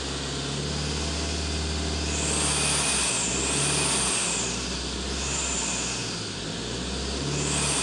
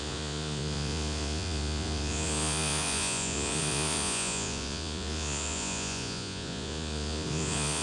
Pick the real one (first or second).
first